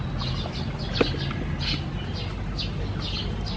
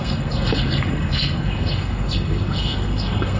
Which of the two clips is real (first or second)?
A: first